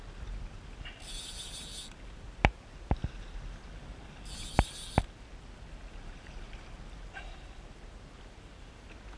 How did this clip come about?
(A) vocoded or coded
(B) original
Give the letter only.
B